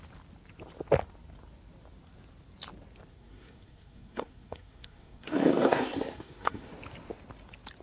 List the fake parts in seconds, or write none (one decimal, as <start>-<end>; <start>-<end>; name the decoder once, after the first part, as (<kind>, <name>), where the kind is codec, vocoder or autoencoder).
3.1-6.7 (codec, SNAC)